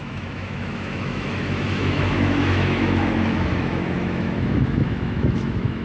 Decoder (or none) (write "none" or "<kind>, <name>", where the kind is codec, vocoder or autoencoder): autoencoder, DAC-VAE